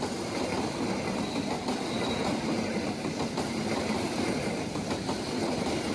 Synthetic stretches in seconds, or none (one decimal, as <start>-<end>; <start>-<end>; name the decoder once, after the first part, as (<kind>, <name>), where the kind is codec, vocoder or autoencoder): none